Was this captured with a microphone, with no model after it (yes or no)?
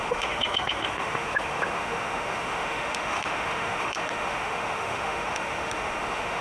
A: no